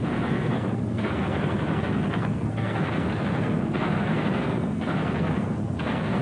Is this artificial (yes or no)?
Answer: yes